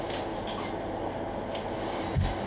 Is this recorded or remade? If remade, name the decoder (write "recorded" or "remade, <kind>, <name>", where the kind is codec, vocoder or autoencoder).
recorded